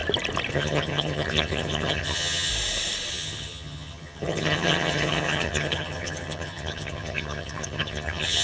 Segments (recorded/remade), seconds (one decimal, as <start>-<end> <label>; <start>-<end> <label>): 0.0-0.5 recorded; 0.5-2.5 remade; 2.5-3.1 recorded; 3.1-8.4 remade